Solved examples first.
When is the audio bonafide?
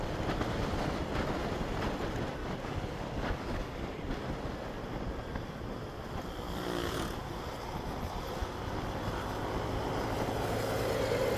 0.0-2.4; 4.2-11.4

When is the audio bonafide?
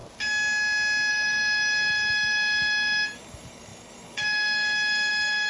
0.0-1.1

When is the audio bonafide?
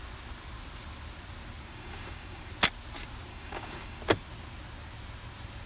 0.0-1.7; 2.5-3.3; 4.0-5.7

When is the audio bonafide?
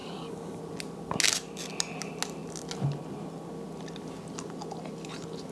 0.6-5.5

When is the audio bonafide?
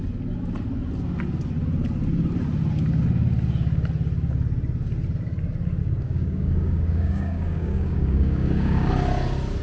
0.0-5.8; 8.9-9.6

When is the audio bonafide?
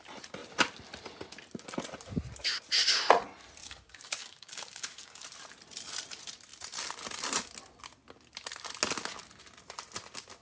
0.0-3.6; 5.2-10.4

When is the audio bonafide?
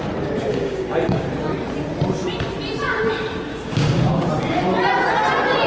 0.0-0.5; 1.2-3.5; 4.3-5.7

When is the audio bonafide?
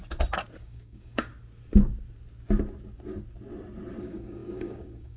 0.0-0.6; 1.3-4.0